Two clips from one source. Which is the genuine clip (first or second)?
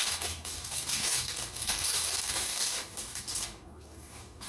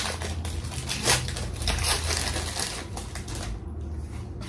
second